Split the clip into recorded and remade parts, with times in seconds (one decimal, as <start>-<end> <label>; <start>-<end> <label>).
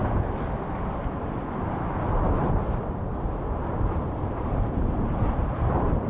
0.0-3.7 recorded; 3.7-6.1 remade